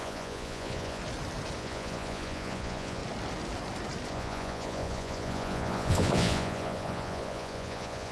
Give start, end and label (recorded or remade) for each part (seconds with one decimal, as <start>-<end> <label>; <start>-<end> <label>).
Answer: 0.0-1.0 remade; 1.0-1.6 recorded; 1.6-3.0 remade; 3.0-4.1 recorded; 4.1-8.1 remade